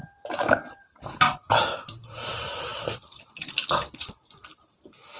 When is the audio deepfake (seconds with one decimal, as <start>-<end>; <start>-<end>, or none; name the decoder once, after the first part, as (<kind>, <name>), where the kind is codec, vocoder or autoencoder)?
0.0-2.3 (vocoder, BigVGAN v2); 2.7-3.2